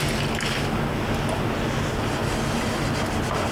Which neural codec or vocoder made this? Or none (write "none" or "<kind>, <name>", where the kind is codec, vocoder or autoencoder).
none